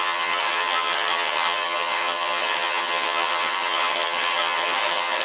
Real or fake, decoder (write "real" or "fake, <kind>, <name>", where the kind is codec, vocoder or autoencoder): fake, vocoder, HiFi-GAN